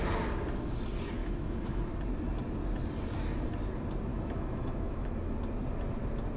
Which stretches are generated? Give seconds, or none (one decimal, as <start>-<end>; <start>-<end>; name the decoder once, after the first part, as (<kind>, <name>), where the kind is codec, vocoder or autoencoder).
1.2-1.8 (autoencoder, DAC-VAE); 4.1-5.1